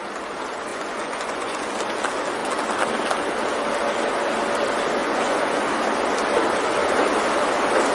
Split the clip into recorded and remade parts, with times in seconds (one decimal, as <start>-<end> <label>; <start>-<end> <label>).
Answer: 0.0-0.7 recorded; 0.7-1.7 remade; 1.7-5.0 recorded; 5.0-5.7 remade; 5.7-7.9 recorded

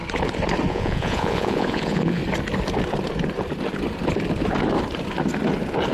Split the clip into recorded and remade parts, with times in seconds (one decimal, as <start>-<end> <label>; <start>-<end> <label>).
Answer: 0.0-0.7 recorded; 0.7-2.2 remade; 2.2-5.9 recorded

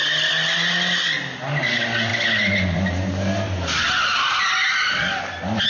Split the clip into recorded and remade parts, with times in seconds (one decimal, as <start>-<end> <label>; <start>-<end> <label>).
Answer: 0.0-5.7 recorded